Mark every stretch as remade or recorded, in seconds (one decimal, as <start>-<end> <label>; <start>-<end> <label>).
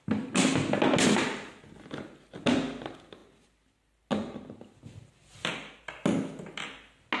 0.0-7.2 recorded